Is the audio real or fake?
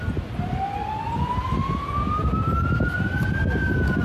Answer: real